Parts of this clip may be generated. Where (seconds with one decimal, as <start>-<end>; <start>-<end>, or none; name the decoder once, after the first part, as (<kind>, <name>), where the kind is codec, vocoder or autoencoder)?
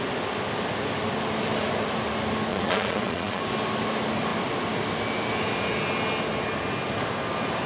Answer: 2.5-3.4 (vocoder, Vocos)